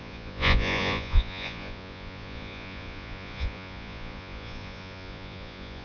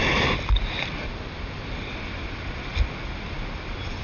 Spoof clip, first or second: first